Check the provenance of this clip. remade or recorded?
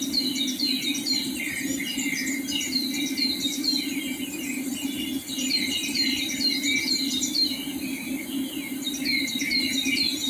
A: recorded